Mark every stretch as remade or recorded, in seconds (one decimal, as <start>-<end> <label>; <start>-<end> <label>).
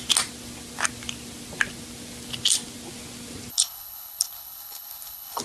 0.0-3.5 recorded; 3.5-5.4 remade